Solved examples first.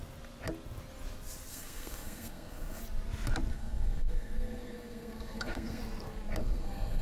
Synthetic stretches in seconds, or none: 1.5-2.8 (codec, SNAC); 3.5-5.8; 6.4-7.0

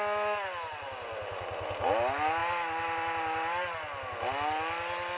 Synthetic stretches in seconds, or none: none